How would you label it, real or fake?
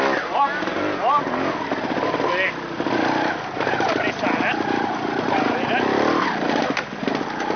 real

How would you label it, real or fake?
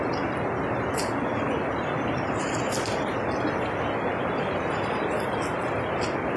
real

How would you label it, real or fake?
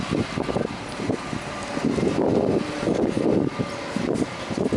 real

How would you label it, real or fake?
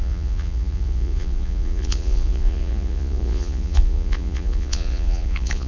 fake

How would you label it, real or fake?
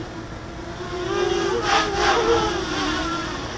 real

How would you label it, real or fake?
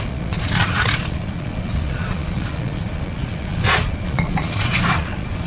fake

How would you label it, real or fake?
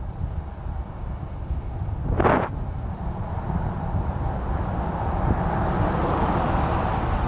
real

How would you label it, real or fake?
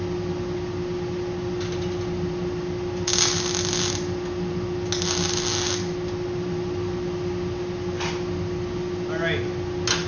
real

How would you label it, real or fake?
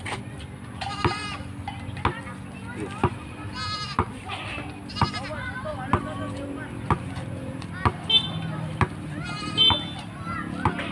real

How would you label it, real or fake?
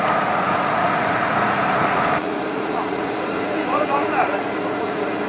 fake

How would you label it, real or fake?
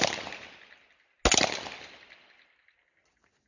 real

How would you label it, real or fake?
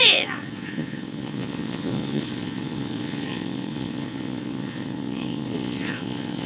fake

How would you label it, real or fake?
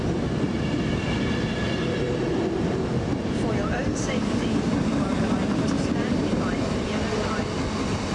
real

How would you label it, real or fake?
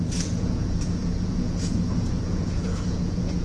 fake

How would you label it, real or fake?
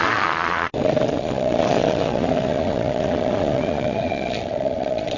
fake